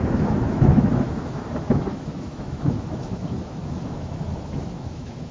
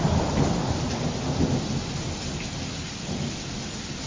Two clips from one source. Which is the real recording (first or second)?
second